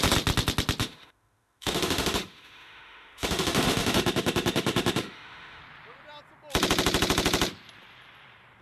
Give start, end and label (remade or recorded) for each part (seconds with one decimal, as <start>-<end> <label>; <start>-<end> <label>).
0.0-0.8 recorded; 0.8-5.6 remade; 5.6-8.6 recorded